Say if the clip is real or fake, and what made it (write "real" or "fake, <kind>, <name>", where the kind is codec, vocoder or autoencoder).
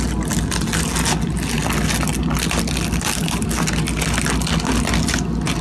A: real